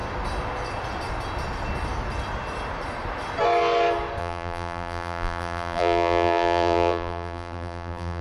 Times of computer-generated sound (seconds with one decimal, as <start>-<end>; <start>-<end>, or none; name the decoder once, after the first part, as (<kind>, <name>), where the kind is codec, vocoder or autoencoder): 4.2-8.2 (vocoder, BigVGAN v2)